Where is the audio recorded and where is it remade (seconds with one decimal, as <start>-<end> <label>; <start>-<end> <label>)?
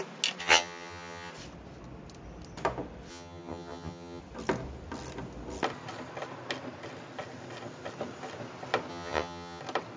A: 0.0-0.4 recorded; 0.4-1.3 remade; 1.3-3.1 recorded; 3.1-4.2 remade; 4.2-8.9 recorded; 8.9-9.6 remade; 9.6-10.0 recorded